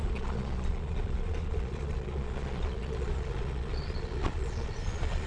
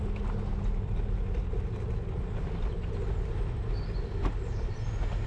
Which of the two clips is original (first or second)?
second